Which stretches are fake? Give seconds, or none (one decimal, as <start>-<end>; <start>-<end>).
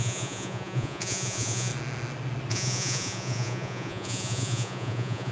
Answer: 0.0-1.7; 2.5-5.3